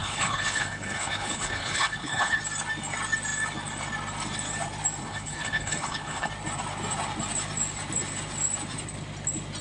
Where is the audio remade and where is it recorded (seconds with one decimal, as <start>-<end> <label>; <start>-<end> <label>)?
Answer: 0.0-2.4 remade; 2.4-5.0 recorded; 5.0-6.3 remade; 6.3-9.6 recorded